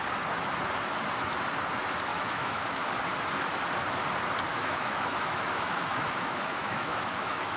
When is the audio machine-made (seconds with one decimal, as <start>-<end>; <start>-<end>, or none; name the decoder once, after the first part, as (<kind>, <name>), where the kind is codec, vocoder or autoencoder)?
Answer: 2.1-2.9 (autoencoder, DAC-VAE); 4.5-7.6